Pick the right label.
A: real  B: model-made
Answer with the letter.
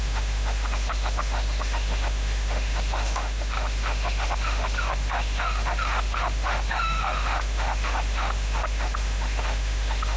B